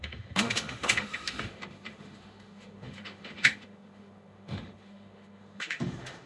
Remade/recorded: remade